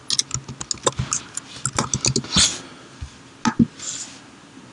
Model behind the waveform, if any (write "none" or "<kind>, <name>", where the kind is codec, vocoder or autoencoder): none